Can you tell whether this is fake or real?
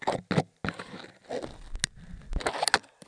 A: real